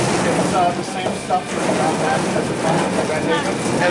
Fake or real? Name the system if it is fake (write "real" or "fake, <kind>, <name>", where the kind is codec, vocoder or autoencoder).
real